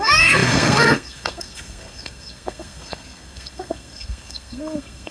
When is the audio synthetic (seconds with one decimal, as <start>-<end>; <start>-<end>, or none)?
0.0-5.1